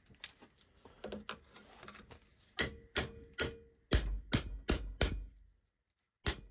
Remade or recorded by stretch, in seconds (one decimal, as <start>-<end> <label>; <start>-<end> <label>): 0.0-6.5 recorded